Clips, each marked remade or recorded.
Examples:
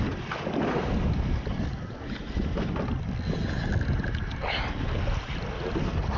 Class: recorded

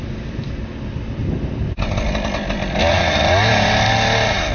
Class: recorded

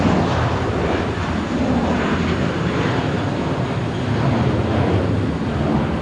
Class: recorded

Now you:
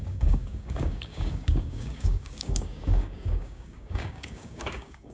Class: remade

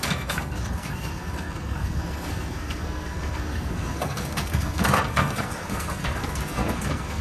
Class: remade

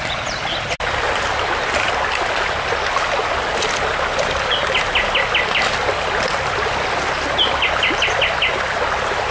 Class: recorded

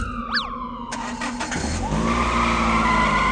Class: recorded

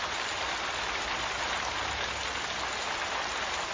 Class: recorded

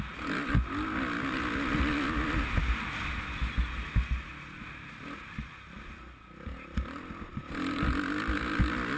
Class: recorded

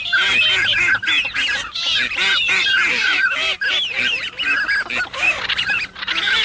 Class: recorded